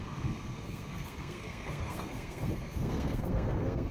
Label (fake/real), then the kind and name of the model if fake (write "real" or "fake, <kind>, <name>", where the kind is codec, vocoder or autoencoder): fake, codec, SNAC